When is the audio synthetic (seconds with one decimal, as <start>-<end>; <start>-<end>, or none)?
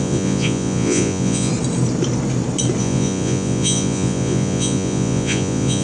0.0-1.5; 2.8-5.8